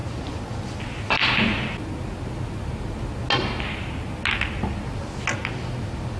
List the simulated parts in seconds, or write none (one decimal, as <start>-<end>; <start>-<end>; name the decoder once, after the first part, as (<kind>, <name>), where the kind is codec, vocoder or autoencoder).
none